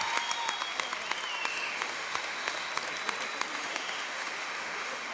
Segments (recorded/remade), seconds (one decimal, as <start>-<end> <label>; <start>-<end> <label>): 0.0-1.5 recorded; 1.5-2.7 remade; 2.7-3.5 recorded; 3.5-5.1 remade